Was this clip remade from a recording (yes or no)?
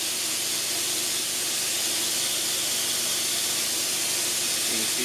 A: no